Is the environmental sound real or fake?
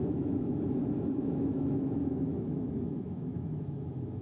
fake